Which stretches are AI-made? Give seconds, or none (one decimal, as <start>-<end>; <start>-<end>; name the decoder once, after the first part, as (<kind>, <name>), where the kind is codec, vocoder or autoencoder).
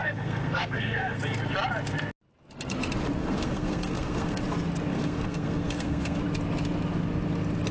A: 0.0-1.2 (codec, SNAC); 3.2-4.4; 4.9-6.2